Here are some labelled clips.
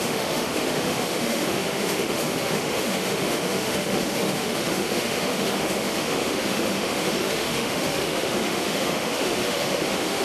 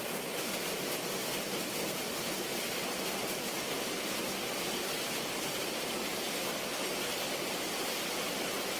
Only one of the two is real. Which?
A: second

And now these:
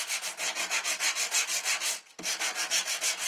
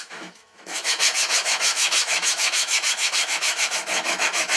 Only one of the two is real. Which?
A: first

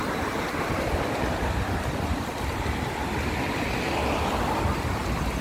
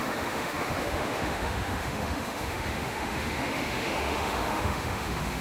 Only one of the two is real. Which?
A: first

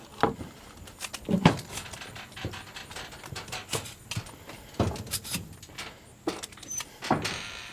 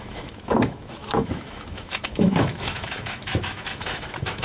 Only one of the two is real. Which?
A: first